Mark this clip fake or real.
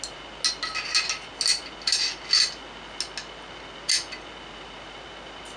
real